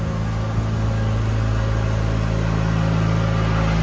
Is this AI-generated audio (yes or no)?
no